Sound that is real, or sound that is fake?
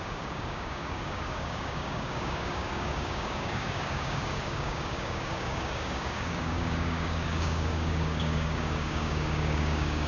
fake